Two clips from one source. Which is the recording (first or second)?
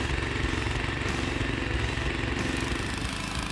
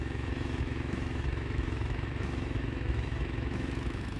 first